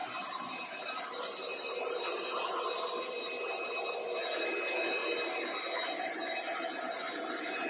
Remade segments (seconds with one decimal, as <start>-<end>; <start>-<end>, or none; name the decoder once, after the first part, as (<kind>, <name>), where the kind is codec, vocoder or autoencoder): 0.0-2.5 (vocoder, BigVGAN v2)